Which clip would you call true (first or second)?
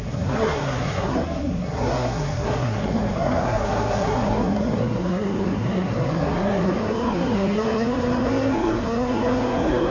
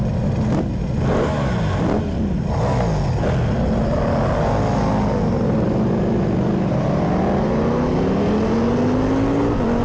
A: second